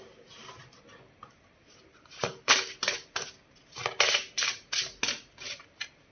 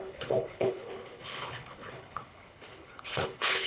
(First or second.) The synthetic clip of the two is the second